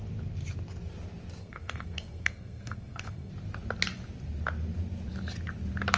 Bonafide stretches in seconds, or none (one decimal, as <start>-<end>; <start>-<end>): 0.0-1.4; 3.3-6.0